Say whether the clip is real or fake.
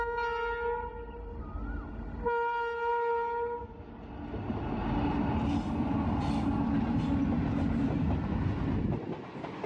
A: real